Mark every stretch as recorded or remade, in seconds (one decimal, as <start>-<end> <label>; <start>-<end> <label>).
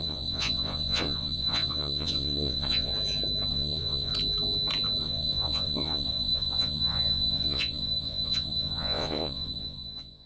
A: 0.0-2.9 remade; 2.9-3.5 recorded; 3.5-4.1 remade; 4.1-5.0 recorded; 5.0-10.3 remade